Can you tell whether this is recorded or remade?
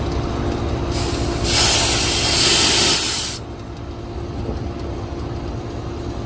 recorded